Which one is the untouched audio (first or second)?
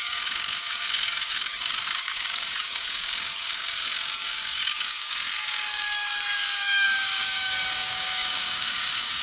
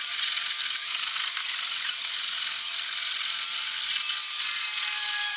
second